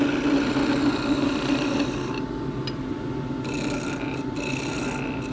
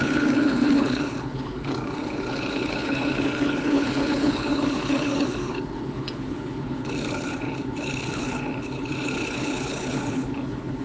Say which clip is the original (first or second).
first